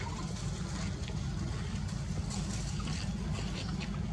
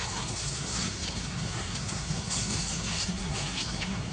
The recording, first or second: first